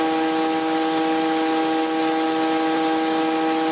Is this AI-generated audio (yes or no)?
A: no